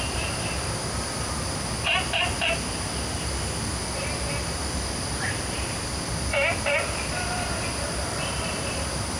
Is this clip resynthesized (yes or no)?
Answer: no